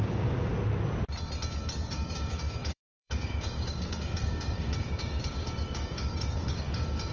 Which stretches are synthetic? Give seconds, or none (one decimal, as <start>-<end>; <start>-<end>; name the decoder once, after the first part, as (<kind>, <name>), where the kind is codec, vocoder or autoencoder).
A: 0.0-0.5 (codec, DAC); 1.9-7.1